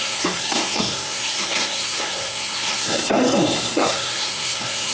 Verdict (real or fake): fake